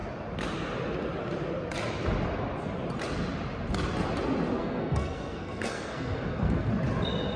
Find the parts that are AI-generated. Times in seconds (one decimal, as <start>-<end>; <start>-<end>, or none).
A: 4.6-6.7

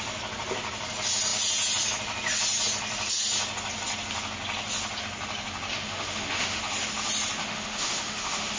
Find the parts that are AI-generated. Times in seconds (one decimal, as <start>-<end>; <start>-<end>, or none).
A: 5.7-6.6; 7.4-8.6

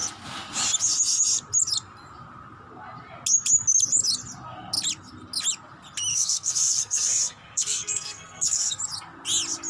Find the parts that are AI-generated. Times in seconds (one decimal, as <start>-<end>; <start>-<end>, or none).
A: 6.1-8.8

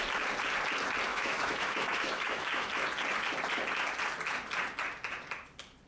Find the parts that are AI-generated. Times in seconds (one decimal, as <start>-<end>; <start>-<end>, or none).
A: 1.1-2.7

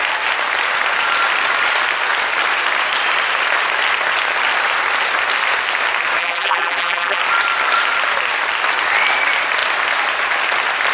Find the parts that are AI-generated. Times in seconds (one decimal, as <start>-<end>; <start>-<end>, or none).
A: 6.2-7.2

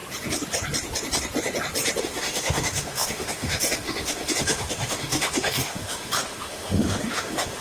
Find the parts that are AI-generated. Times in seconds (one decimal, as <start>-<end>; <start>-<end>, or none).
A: 2.0-7.6